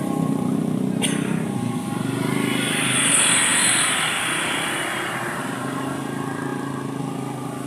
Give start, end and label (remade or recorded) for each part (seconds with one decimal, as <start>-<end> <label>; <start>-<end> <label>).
0.0-7.7 recorded